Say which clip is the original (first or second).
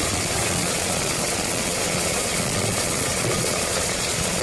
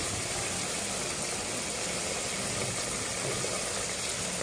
second